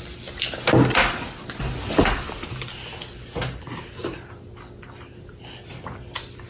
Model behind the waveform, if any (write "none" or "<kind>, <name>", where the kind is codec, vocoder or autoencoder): none